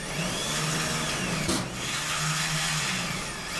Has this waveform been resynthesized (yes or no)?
no